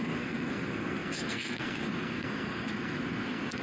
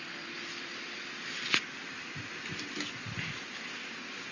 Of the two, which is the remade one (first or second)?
first